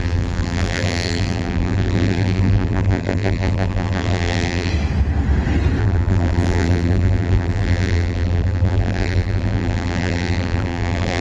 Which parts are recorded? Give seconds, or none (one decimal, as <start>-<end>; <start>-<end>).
4.7-5.8